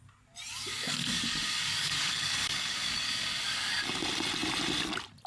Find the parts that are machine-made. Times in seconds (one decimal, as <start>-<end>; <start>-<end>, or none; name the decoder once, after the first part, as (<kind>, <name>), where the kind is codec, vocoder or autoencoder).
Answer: 0.5-3.7 (codec, DAC)